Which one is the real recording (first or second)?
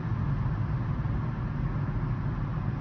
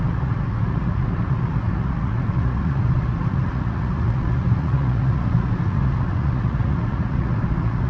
first